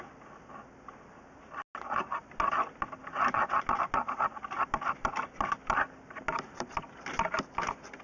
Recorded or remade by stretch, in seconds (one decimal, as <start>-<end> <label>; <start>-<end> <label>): 0.0-8.0 recorded